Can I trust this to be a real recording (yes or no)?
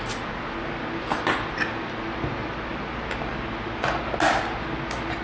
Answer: yes